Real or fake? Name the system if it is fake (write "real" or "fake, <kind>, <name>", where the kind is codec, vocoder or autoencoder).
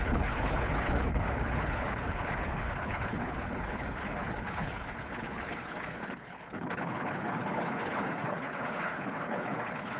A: fake, codec, HILCodec